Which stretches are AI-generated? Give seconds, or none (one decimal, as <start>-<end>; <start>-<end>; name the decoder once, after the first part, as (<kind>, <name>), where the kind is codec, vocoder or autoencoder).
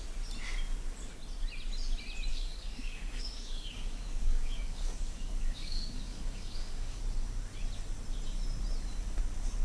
2.3-7.0 (codec, DAC)